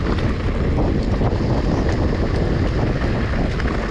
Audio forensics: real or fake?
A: real